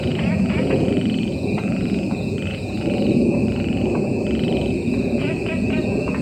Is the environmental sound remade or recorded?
remade